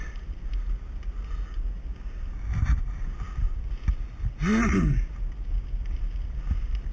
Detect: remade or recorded recorded